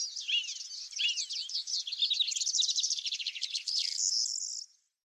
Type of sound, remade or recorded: recorded